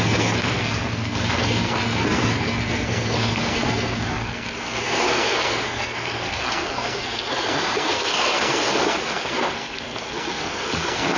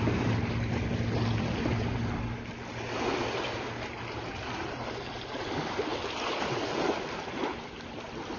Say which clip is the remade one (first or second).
first